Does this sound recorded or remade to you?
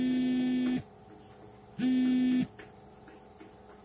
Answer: recorded